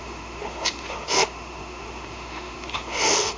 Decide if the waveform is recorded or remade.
remade